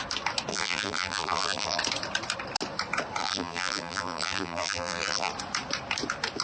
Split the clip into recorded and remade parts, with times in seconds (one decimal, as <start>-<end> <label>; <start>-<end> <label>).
0.0-0.5 recorded; 0.5-1.8 remade; 1.8-3.2 recorded; 3.2-5.3 remade; 5.3-6.4 recorded